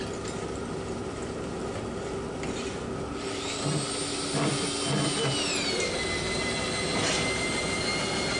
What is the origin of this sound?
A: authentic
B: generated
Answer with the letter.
A